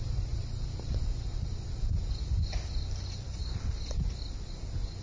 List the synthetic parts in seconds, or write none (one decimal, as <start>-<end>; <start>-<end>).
none